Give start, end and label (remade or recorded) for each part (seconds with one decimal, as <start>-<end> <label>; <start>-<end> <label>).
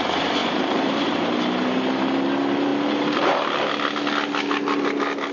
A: 0.0-0.4 recorded; 0.4-1.0 remade; 1.0-5.3 recorded